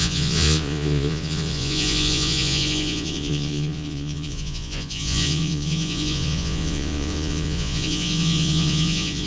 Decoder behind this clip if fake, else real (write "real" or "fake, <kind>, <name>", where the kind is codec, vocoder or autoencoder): fake, vocoder, Vocos